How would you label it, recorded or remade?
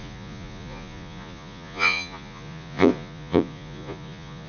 remade